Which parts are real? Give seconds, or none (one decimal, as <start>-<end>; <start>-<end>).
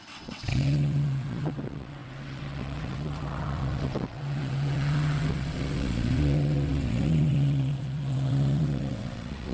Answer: none